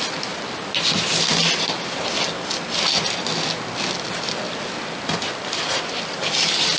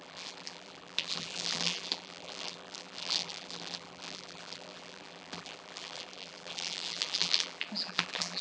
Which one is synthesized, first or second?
second